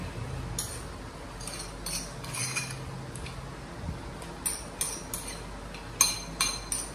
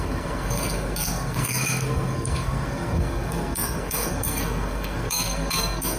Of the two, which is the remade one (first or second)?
second